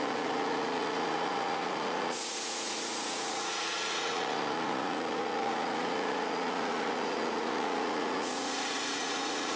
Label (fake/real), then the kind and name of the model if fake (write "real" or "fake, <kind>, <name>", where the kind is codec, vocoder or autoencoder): fake, vocoder, Vocos